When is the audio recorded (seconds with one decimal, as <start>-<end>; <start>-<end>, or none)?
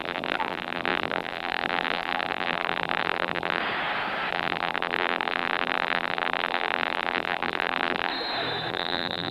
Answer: 3.6-4.3; 8.1-8.7